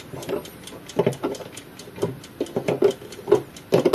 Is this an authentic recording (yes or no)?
yes